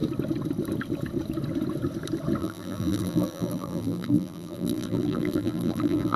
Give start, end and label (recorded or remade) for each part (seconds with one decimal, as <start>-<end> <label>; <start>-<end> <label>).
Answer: 0.0-2.4 recorded; 2.4-6.2 remade